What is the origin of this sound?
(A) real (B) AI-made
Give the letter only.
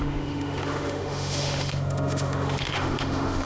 B